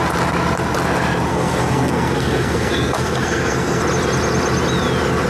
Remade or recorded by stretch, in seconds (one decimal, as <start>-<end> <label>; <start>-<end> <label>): 0.0-1.3 recorded; 1.3-3.8 remade; 3.8-5.3 recorded